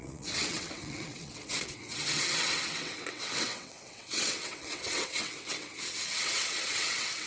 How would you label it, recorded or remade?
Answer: remade